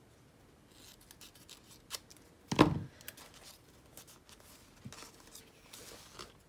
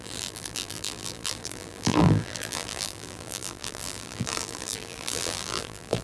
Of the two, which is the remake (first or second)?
second